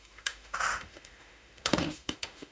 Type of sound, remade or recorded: remade